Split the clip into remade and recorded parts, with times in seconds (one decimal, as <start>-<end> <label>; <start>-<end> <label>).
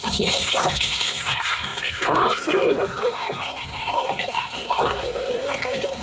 0.0-6.0 remade